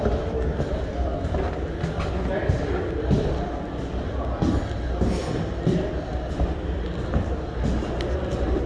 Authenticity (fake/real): real